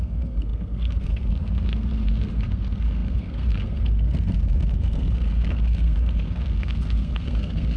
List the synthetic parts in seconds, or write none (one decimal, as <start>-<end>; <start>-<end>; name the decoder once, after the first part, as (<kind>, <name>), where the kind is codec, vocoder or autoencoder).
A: 0.0-7.8 (codec, SNAC)